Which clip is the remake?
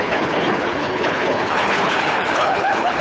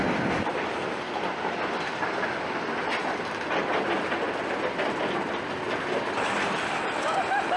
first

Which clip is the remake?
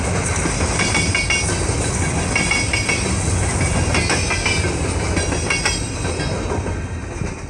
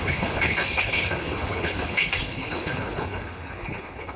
second